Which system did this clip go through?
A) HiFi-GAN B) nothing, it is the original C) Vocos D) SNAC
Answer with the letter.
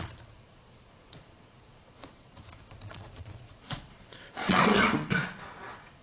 C